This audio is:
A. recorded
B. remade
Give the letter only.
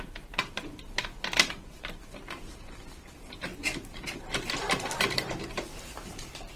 B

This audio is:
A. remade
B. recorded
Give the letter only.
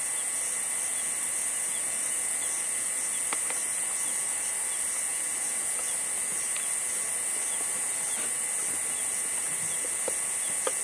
B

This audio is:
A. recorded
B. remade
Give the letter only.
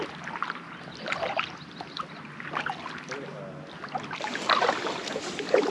A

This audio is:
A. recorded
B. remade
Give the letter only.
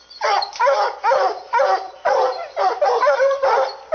B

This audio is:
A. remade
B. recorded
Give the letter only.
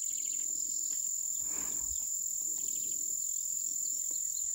B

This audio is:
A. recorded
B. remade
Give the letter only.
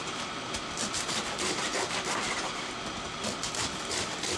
B